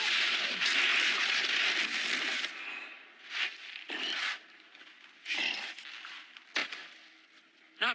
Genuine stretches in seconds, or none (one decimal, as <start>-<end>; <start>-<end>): 0.0-7.9